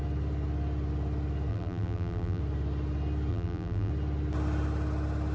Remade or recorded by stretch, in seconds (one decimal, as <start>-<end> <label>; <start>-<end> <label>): 0.0-1.5 recorded; 1.5-2.4 remade; 2.4-3.3 recorded; 3.3-3.9 remade; 3.9-5.3 recorded